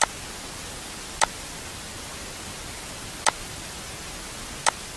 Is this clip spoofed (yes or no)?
no